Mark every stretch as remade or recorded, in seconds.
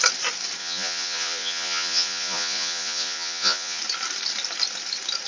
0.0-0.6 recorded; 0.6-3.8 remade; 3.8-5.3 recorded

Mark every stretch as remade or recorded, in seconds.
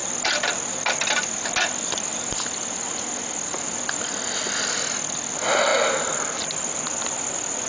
0.0-7.7 recorded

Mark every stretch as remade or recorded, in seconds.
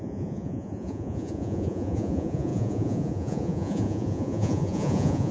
0.0-5.3 remade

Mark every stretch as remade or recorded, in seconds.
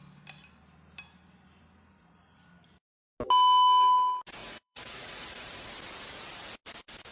0.0-4.4 recorded; 4.4-5.7 remade; 5.7-7.1 recorded